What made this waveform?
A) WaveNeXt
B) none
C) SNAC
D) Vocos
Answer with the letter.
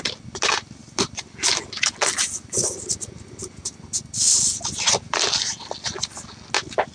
B